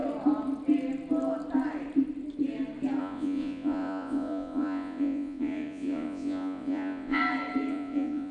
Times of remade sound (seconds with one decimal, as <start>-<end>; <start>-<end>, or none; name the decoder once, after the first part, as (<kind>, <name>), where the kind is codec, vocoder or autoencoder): 3.0-7.2 (vocoder, Vocos); 7.7-8.3